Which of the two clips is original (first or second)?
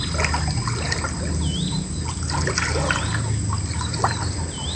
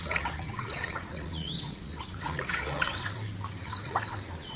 first